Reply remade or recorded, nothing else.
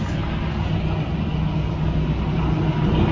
recorded